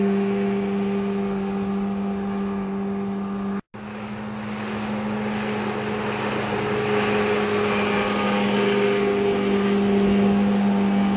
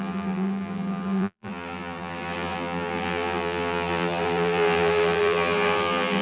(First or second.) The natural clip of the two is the first